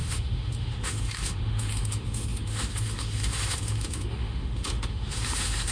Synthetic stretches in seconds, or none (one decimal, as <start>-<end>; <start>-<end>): 0.0-5.7